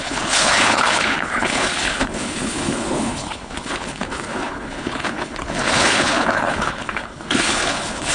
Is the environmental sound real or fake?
fake